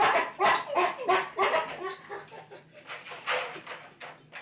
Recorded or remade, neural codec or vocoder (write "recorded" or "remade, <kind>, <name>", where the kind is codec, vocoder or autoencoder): recorded